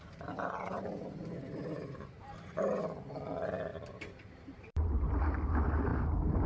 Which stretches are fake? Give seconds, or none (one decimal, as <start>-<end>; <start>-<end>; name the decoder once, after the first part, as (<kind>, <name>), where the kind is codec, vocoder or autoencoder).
0.0-2.7 (vocoder, BigVGAN v2); 3.7-5.1

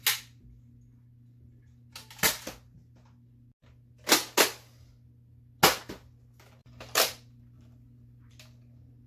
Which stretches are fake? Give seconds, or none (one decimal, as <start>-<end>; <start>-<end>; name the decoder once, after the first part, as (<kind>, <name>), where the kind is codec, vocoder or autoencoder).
6.6-8.3 (vocoder, BigVGAN v2)

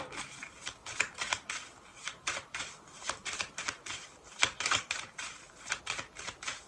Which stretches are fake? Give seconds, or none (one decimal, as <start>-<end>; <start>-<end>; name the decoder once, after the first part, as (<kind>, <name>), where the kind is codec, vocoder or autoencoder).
1.9-5.8 (vocoder, BigVGAN v2)

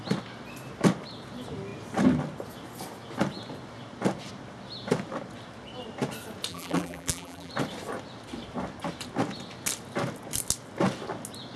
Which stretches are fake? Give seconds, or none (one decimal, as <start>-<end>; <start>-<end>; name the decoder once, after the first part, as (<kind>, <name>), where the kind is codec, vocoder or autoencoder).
6.5-7.5 (vocoder, BigVGAN v2)

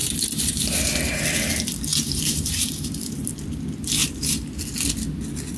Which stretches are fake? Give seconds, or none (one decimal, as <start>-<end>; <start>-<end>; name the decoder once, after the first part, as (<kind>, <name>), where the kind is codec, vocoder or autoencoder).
0.0-1.2 (vocoder, BigVGAN v2); 1.9-3.3; 4.0-4.6

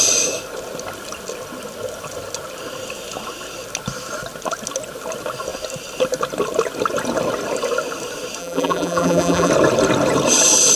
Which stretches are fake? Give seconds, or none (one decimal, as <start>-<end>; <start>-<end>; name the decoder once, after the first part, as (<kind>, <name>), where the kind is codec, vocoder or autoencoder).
8.4-9.5 (vocoder, BigVGAN v2)

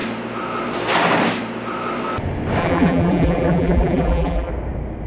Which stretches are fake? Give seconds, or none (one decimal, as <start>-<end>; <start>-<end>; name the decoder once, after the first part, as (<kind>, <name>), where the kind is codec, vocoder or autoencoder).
2.6-4.5 (vocoder, BigVGAN v2)